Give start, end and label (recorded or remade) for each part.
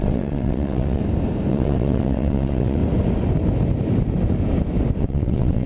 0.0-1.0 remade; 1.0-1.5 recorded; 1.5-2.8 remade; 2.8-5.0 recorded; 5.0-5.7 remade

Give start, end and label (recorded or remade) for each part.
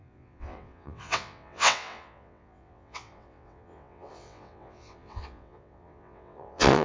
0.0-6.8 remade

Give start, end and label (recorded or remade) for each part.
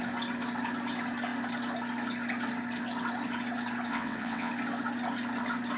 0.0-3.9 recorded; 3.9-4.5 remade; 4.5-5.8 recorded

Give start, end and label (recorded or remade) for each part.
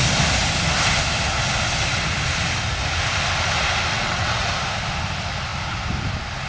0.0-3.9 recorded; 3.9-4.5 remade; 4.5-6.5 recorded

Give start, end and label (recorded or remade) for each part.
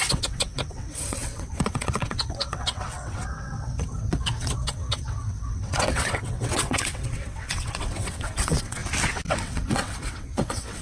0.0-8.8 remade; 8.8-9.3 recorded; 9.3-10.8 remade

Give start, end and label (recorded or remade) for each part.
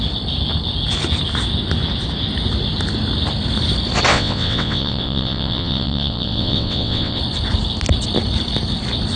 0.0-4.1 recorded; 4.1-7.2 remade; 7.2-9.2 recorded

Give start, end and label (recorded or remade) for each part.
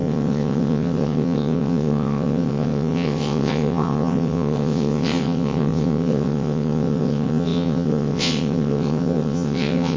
0.0-10.0 remade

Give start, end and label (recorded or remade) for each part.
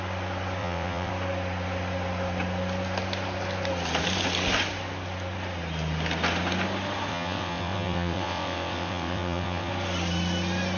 0.0-0.6 recorded; 0.6-1.1 remade; 1.1-7.1 recorded; 7.1-9.7 remade; 9.7-10.8 recorded